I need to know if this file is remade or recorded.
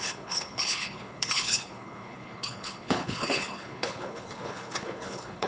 remade